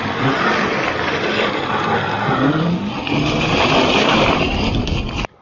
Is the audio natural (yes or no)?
yes